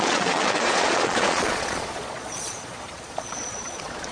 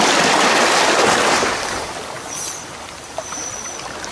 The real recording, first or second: second